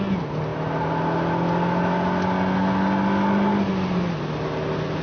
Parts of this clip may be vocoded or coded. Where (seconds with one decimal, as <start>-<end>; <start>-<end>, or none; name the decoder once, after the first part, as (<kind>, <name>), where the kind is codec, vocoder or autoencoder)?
none